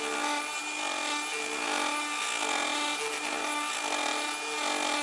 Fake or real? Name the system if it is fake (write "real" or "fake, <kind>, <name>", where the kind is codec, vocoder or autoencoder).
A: real